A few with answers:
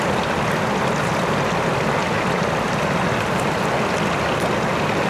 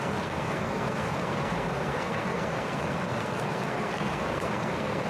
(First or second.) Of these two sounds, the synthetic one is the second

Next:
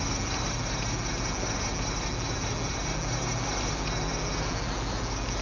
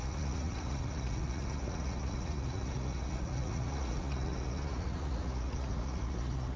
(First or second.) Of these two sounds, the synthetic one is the second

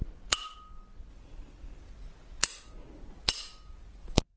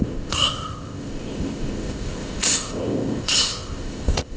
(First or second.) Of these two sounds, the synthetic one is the second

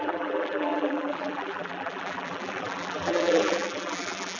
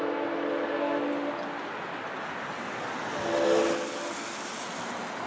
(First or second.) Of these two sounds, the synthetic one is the first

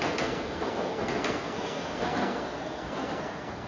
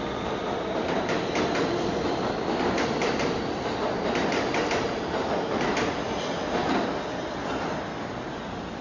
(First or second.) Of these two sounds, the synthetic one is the first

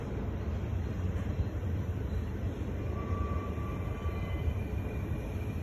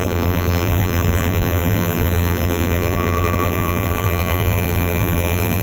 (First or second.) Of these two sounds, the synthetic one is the second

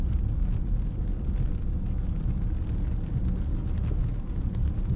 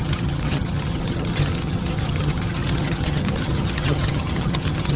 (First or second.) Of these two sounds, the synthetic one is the second